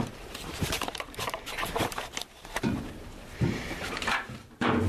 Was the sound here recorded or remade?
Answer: remade